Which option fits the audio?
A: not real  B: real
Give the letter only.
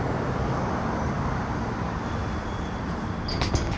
B